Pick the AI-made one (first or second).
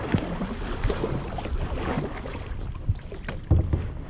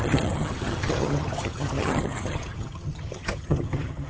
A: second